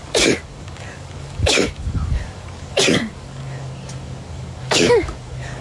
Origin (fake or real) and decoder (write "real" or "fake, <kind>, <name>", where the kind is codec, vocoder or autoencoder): fake, codec, DAC